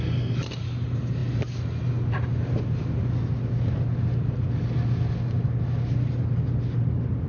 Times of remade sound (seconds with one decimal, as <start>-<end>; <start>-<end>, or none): none